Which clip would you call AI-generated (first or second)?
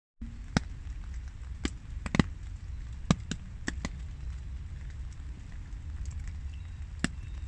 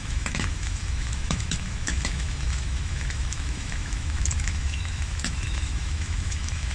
second